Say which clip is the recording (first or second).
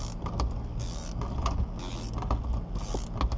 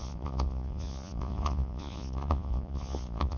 first